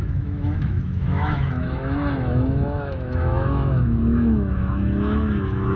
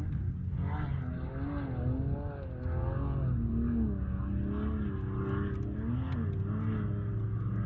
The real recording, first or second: second